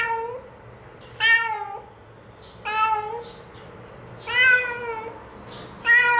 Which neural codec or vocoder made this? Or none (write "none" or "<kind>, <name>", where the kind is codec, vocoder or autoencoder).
none